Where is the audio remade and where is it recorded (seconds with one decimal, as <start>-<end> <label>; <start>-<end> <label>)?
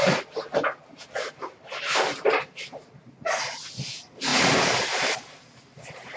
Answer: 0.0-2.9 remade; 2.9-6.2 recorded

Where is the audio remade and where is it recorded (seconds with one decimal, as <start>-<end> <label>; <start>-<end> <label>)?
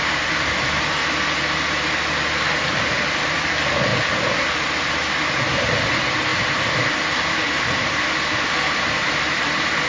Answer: 0.0-1.0 remade; 1.0-3.2 recorded; 3.2-9.9 remade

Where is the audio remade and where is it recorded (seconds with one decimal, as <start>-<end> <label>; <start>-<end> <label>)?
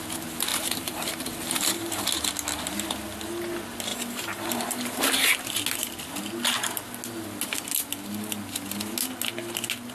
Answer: 0.0-0.5 recorded; 0.5-2.1 remade; 2.1-3.9 recorded; 3.9-5.6 remade; 5.6-9.9 recorded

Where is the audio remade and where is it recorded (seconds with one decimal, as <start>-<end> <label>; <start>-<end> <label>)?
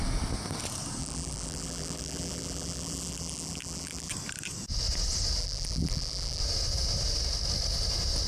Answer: 0.0-1.0 recorded; 1.0-4.1 remade; 4.1-5.4 recorded; 5.4-6.4 remade; 6.4-8.3 recorded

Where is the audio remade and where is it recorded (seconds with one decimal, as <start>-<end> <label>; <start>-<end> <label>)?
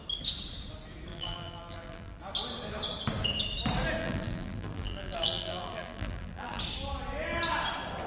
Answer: 0.0-1.1 recorded; 1.1-2.2 remade; 2.2-4.0 recorded; 4.0-6.6 remade; 6.6-8.1 recorded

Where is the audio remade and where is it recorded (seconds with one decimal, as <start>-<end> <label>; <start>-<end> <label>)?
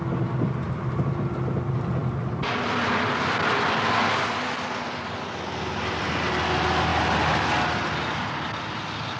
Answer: 0.0-9.2 recorded